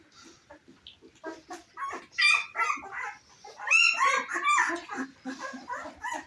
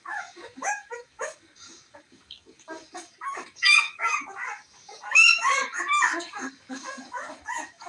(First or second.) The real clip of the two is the first